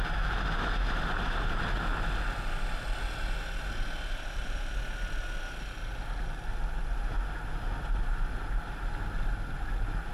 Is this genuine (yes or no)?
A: yes